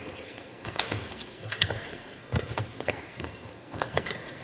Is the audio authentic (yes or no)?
no